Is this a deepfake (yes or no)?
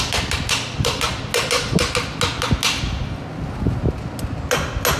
no